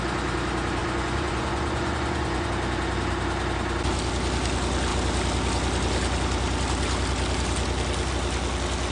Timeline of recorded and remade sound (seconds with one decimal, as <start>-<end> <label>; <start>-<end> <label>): 0.0-0.8 recorded; 0.8-2.5 remade; 2.5-8.9 recorded